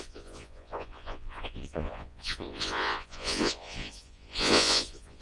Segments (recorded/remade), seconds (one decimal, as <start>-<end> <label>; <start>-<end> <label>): 0.0-5.2 remade